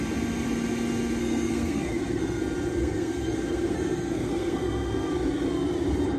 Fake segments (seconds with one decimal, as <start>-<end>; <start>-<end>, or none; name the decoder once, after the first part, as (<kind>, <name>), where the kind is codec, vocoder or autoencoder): 1.2-2.4 (codec, SNAC); 2.8-5.1